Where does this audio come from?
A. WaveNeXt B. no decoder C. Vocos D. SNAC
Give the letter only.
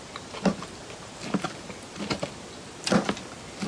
B